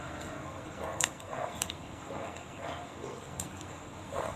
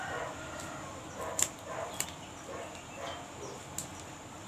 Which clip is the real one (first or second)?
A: second